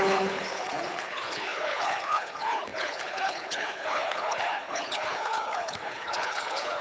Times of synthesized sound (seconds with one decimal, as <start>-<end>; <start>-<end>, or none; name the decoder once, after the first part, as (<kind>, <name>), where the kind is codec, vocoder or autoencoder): 0.0-6.8 (codec, HILCodec)